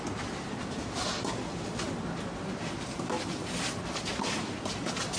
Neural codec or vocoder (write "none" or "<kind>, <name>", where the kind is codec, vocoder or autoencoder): none